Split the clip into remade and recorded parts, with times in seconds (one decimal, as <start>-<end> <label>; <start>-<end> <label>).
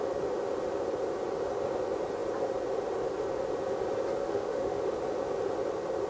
0.0-4.2 recorded; 4.2-4.8 remade; 4.8-6.1 recorded